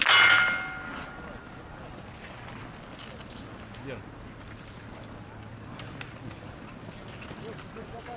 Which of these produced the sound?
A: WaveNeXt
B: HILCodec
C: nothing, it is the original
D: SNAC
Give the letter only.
C